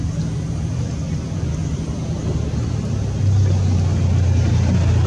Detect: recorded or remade recorded